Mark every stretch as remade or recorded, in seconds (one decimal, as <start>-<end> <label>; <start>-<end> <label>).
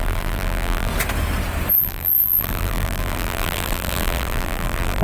0.0-0.9 remade; 0.9-1.8 recorded; 1.8-5.0 remade